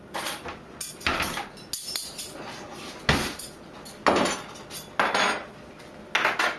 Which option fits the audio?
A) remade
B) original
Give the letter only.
B